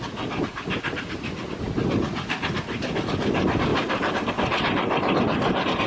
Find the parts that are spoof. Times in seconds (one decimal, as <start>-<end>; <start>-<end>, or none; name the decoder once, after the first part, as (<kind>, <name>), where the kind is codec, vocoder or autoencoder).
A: 3.7-4.3 (vocoder, BigVGAN v2)